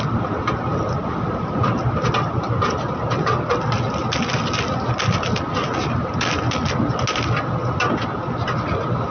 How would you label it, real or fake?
real